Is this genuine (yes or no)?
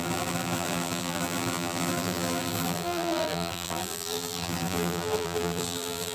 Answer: no